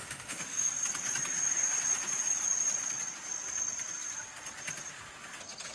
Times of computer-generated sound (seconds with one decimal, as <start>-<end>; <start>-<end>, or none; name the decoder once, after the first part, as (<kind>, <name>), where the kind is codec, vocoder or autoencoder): 0.0-0.7 (autoencoder, DAC-VAE)